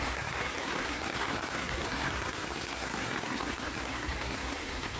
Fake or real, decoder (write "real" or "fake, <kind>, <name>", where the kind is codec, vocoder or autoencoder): fake, codec, SNAC